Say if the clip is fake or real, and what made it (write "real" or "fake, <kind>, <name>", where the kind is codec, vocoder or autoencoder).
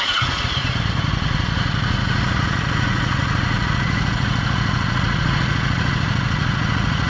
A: fake, vocoder, Vocos